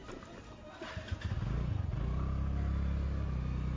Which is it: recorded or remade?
recorded